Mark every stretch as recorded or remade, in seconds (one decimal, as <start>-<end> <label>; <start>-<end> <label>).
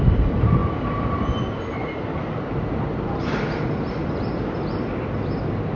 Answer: 0.0-5.8 recorded